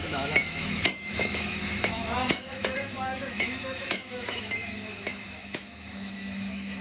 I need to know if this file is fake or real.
fake